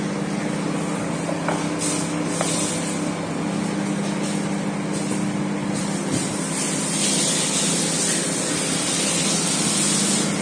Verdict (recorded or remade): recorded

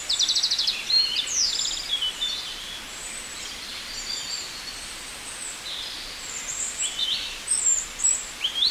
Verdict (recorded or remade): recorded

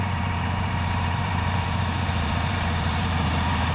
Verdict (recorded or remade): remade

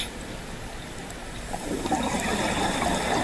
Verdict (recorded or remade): recorded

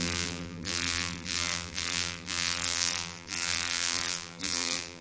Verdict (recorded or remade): remade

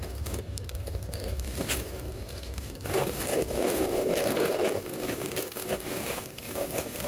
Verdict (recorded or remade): remade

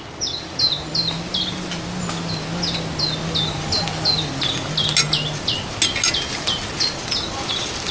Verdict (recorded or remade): recorded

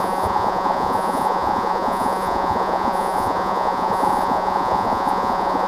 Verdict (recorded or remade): remade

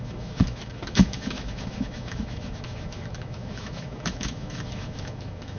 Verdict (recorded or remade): remade